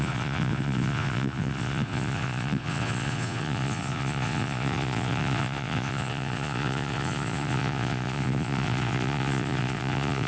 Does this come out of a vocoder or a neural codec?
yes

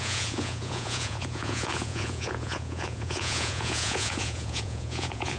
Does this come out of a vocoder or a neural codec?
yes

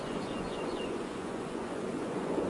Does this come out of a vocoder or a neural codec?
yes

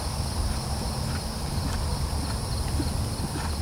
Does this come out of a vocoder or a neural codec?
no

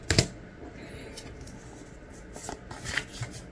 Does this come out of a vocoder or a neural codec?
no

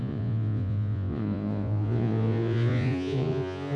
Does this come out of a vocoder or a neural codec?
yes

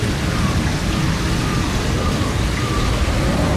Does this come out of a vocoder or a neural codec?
no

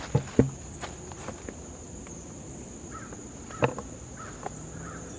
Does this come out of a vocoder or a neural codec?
no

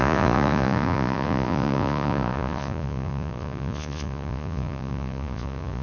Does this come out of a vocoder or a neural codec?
yes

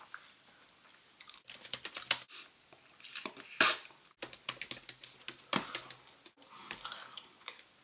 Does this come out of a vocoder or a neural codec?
no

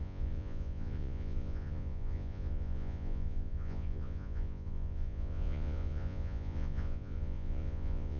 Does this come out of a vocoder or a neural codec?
yes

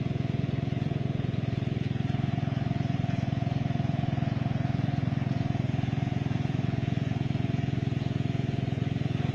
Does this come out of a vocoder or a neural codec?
yes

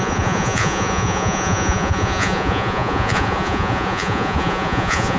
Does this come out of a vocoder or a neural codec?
yes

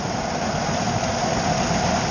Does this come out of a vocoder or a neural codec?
no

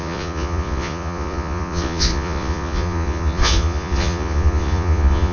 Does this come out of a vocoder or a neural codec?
yes